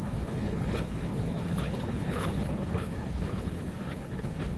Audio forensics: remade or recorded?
remade